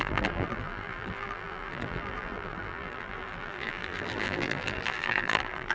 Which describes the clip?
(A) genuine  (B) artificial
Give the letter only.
B